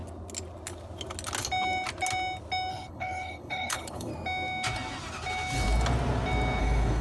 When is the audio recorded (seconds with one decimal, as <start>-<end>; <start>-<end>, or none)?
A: 0.0-2.7; 4.1-6.6